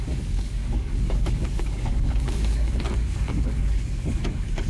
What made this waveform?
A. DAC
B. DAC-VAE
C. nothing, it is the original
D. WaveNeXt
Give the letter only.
A